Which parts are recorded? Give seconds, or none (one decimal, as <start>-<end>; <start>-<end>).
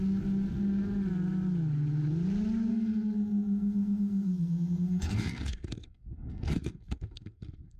0.0-2.7